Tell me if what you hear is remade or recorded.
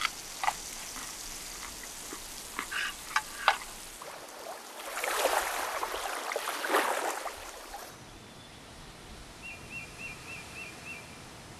recorded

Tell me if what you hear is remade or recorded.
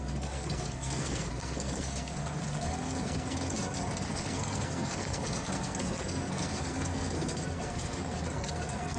remade